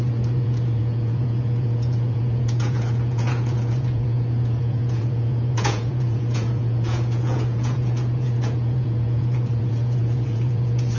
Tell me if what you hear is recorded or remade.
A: remade